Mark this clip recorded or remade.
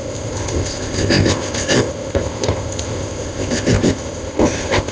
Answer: remade